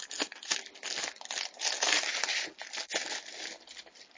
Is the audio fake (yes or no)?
no